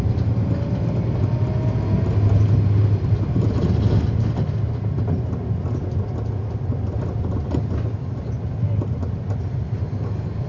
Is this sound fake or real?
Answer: real